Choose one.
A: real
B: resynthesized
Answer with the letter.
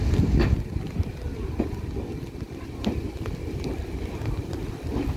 A